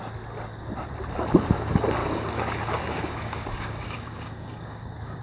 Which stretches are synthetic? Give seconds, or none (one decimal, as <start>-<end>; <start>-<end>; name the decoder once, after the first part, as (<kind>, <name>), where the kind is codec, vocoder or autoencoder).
2.0-5.2 (codec, DAC)